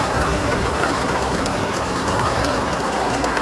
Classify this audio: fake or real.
fake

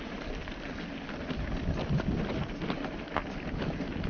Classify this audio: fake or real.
real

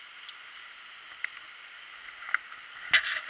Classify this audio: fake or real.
real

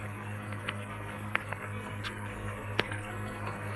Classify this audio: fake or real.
fake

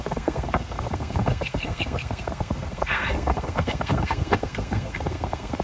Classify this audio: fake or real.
fake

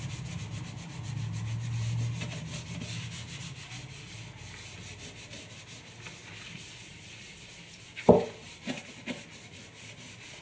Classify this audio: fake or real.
real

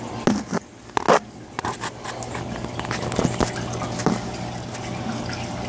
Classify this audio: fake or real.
real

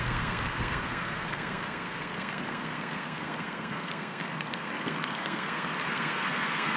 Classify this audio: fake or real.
fake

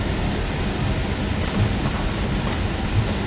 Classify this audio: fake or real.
real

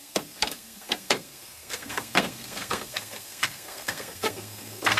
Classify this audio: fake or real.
fake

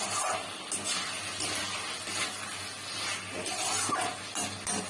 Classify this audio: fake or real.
real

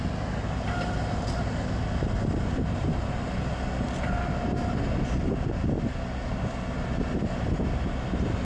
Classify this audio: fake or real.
real